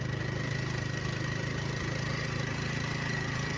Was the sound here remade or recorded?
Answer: remade